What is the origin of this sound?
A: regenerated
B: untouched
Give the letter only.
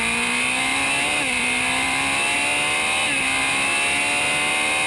B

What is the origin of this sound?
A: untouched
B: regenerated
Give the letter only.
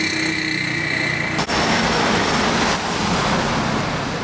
A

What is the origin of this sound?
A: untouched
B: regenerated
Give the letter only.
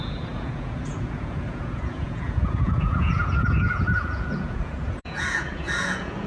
B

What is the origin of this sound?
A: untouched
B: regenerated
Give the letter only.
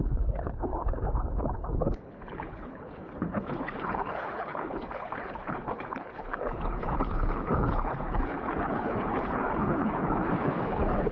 B